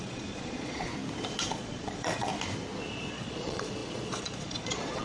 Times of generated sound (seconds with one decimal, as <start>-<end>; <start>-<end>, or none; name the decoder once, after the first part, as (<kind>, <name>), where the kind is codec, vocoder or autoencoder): 0.0-0.9 (vocoder, Vocos); 1.5-2.3; 2.9-5.0